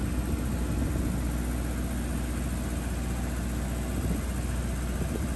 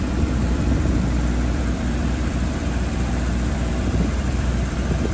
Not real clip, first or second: second